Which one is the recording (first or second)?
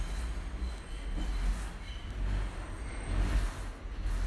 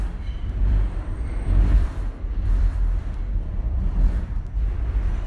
first